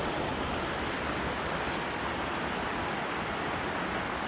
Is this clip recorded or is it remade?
recorded